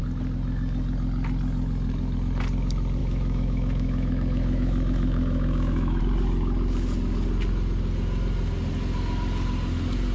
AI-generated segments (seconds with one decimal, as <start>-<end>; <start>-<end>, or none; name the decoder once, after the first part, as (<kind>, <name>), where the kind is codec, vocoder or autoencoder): 3.0-6.0 (autoencoder, DAC-VAE)